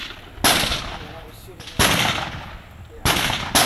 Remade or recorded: recorded